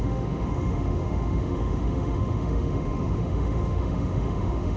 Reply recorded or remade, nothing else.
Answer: remade